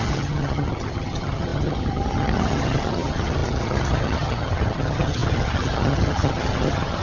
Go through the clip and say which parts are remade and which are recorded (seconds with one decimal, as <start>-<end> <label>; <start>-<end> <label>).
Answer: 0.0-7.0 remade

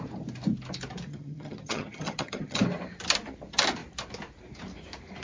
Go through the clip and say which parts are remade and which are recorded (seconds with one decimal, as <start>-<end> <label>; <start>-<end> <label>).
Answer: 0.0-1.1 recorded; 1.1-2.6 remade; 2.6-5.2 recorded

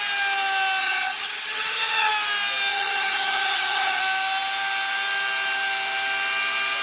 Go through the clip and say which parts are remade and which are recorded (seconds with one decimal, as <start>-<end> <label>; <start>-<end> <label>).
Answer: 0.0-0.8 recorded; 0.8-2.1 remade; 2.1-2.7 recorded; 2.7-4.0 remade; 4.0-6.8 recorded

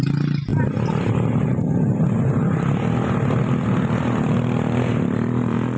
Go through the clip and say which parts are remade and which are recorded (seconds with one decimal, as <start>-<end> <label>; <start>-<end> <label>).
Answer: 0.0-5.8 recorded